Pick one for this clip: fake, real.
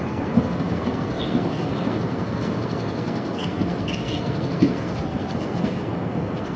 fake